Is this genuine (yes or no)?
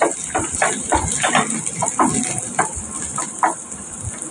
yes